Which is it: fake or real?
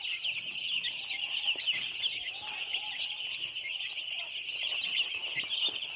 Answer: real